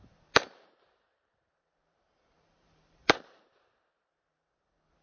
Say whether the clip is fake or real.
fake